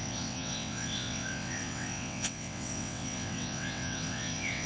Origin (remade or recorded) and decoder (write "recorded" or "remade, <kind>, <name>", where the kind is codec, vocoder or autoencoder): remade, vocoder, WaveNeXt